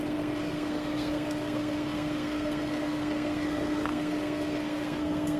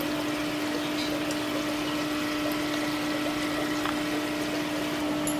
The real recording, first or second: second